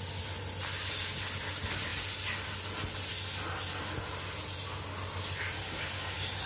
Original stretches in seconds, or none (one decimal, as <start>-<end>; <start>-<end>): 0.0-6.5